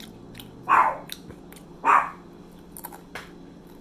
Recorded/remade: recorded